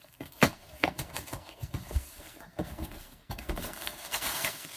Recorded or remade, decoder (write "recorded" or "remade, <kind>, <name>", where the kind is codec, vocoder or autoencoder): remade, codec, SNAC